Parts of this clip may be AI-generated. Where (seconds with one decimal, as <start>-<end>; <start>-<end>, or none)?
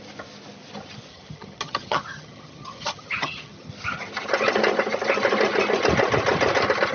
1.1-3.7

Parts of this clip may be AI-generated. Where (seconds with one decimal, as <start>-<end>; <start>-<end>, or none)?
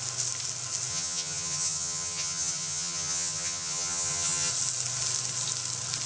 0.9-4.5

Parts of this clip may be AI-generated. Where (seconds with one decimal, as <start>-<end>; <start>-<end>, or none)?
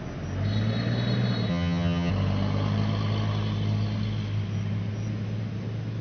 1.5-2.1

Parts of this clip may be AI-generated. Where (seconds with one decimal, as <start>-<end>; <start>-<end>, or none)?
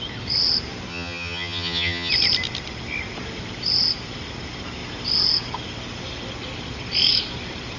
0.9-2.1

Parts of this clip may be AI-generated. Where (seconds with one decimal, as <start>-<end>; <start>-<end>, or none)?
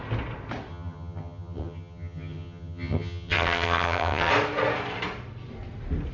0.7-4.3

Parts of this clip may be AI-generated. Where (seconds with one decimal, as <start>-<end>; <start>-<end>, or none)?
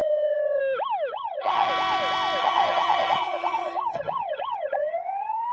0.0-0.6; 1.1-1.7; 2.4-5.5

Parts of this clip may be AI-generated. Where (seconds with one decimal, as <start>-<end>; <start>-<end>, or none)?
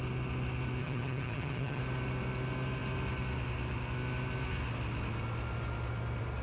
0.8-1.8